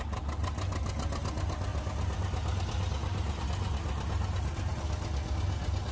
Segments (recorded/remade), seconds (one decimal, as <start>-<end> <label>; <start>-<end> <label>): 0.0-5.9 recorded